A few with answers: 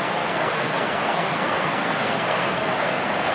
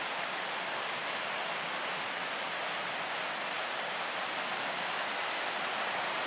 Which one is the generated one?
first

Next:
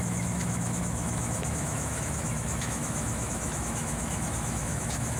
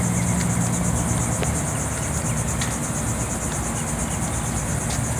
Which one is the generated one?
first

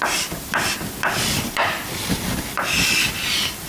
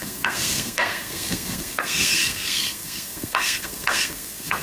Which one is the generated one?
second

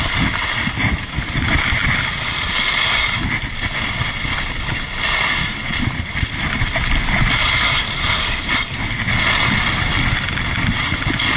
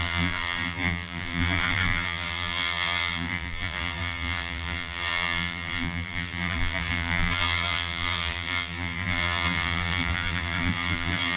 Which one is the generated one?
second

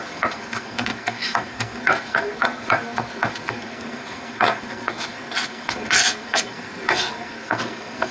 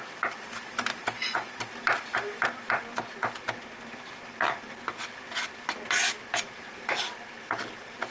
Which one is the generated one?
first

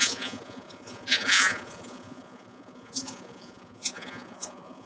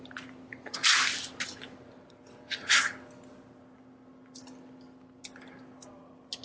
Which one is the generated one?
first